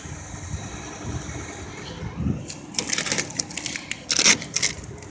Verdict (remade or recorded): recorded